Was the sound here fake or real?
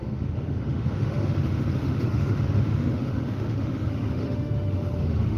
fake